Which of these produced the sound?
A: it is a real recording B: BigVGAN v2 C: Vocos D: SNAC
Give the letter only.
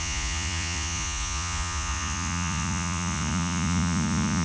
C